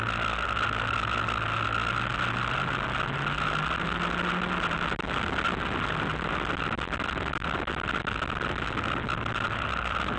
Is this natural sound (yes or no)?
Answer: yes